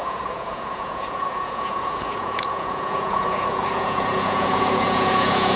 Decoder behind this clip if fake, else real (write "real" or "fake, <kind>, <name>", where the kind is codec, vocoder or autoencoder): fake, vocoder, Vocos